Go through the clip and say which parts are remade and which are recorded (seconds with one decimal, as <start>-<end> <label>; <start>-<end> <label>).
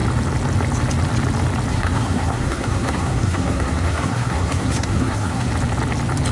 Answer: 0.0-1.7 recorded; 1.7-5.5 remade; 5.5-6.3 recorded